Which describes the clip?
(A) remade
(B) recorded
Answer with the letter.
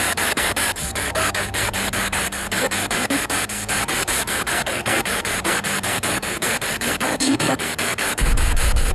A